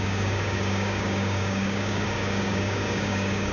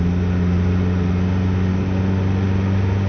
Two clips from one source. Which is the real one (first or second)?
second